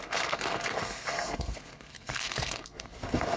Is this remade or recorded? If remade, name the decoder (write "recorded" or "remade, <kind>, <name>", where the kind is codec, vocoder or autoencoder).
remade, codec, SNAC